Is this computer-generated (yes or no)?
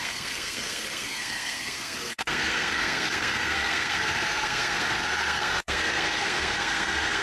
yes